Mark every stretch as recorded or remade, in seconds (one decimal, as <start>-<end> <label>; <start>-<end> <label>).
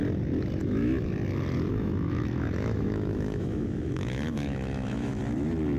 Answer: 0.0-0.6 recorded; 0.6-1.1 remade; 1.1-1.7 recorded; 1.7-5.2 remade; 5.2-5.8 recorded